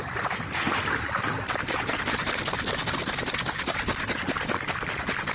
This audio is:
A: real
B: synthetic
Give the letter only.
A